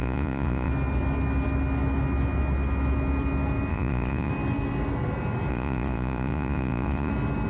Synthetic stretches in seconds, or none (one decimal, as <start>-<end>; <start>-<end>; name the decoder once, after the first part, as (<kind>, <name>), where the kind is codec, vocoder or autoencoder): 0.0-0.7 (vocoder, Vocos); 3.7-4.3; 5.5-7.1